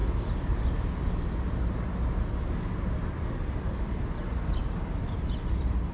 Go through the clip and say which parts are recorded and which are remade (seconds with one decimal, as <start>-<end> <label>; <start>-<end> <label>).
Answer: 0.0-3.5 recorded; 3.5-5.9 remade